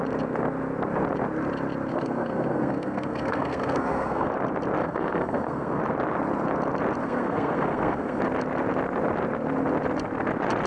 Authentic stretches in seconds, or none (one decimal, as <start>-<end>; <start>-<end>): 0.0-1.9; 4.3-4.8; 5.8-7.0; 8.2-10.7